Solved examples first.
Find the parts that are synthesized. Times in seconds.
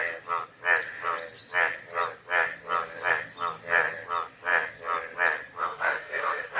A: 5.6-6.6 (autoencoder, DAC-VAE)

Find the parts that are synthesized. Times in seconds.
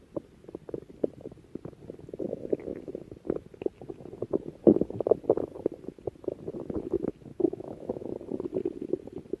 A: 7.3-8.1 (autoencoder, DAC-VAE)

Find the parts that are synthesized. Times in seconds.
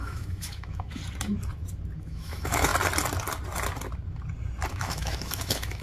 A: 0.0-1.0 (autoencoder, DAC-VAE); 2.0-2.7; 4.7-5.8